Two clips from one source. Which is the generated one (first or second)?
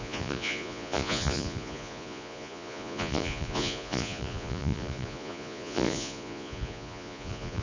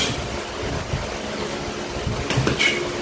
first